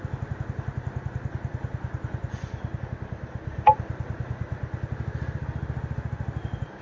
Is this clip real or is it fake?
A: real